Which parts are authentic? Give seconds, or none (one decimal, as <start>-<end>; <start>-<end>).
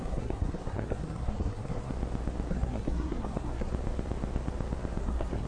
1.9-2.5; 3.7-5.0